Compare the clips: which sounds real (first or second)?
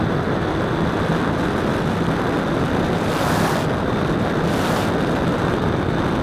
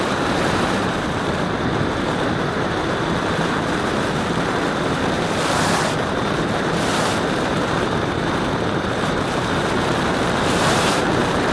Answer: first